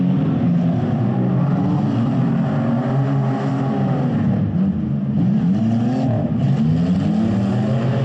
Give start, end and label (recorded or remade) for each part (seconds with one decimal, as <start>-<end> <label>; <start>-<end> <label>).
0.0-8.0 recorded